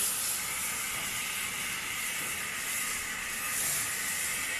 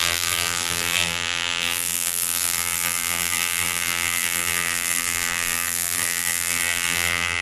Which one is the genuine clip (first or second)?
first